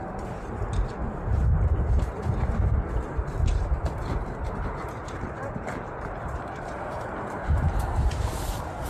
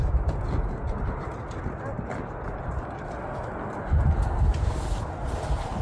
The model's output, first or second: first